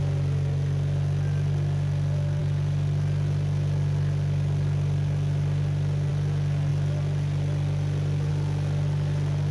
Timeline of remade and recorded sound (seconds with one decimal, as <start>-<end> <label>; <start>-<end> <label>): 0.0-9.5 recorded